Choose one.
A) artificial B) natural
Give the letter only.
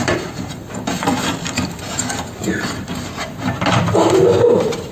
B